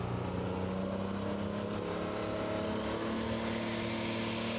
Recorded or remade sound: recorded